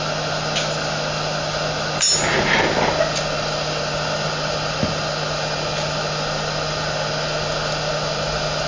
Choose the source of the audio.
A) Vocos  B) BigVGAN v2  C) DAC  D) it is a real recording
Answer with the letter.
D